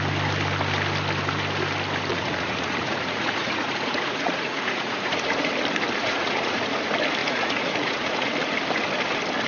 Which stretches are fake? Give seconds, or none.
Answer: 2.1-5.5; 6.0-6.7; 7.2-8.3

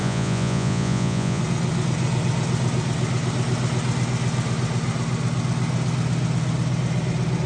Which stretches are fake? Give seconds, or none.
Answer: 0.0-1.4

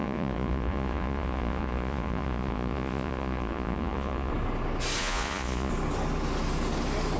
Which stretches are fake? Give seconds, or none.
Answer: 0.0-4.3; 5.0-5.7